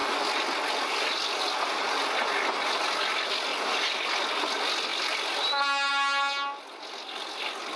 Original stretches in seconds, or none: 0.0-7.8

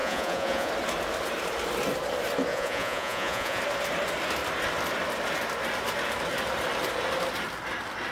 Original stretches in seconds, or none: 0.7-2.5; 3.6-8.1

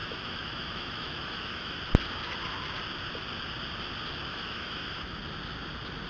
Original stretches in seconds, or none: 1.8-4.3; 5.2-6.1